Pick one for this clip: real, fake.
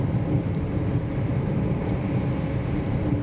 real